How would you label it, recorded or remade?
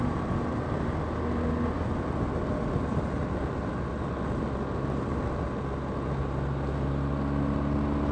recorded